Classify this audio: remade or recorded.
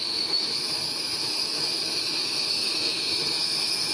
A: remade